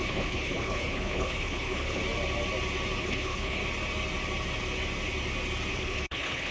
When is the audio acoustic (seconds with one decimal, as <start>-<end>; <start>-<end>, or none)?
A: 2.0-3.0; 3.6-5.7